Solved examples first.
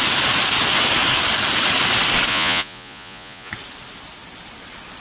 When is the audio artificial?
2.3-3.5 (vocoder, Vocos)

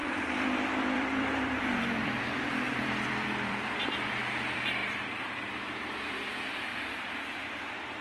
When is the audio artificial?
0.0-6.7 (vocoder, BigVGAN v2)

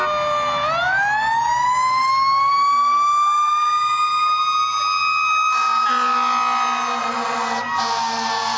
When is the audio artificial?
1.9-2.5 (codec, DAC)

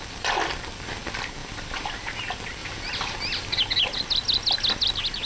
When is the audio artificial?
1.4-2.2 (vocoder, BigVGAN v2); 2.6-3.6

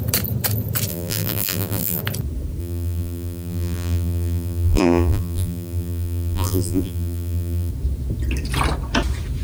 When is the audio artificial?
0.9-2.0 (vocoder, BigVGAN v2); 2.6-7.7